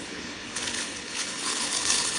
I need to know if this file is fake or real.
fake